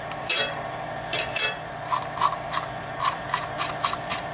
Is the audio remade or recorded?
remade